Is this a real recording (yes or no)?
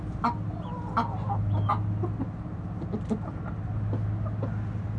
yes